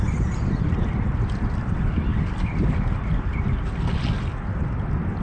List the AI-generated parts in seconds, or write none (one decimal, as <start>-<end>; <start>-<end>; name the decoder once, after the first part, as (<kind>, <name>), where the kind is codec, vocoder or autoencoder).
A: none